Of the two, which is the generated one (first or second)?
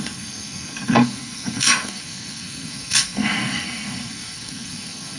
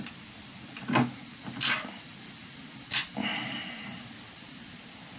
first